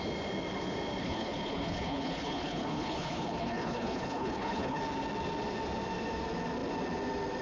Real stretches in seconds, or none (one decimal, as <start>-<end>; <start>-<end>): 0.0-1.0; 4.8-7.4